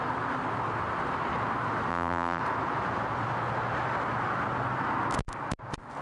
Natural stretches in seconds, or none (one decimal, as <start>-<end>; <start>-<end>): 0.0-1.9; 2.4-6.0